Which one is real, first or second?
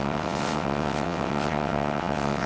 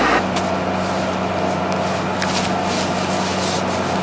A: second